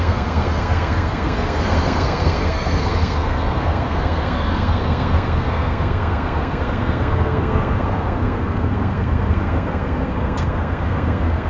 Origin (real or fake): fake